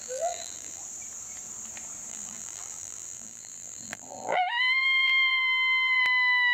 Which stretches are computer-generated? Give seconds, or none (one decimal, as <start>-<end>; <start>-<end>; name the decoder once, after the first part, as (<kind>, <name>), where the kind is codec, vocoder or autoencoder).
0.0-0.8 (vocoder, BigVGAN v2); 2.1-6.0